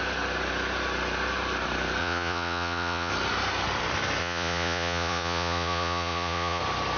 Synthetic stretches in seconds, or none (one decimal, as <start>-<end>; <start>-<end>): 2.0-3.1; 4.2-6.6